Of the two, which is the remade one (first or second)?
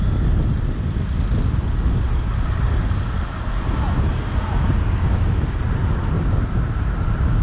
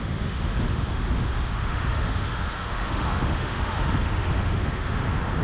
second